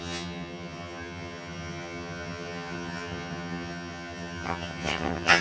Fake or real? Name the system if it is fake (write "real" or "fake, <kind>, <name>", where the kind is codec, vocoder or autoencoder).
fake, vocoder, HiFi-GAN